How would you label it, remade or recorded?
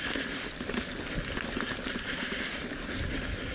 recorded